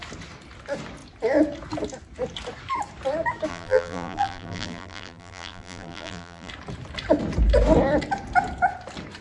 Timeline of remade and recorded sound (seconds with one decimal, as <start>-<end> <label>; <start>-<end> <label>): 0.0-3.5 recorded; 3.5-6.5 remade; 6.5-9.2 recorded